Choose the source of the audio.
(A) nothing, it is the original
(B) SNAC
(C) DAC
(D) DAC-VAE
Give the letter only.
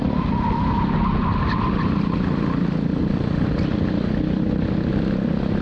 A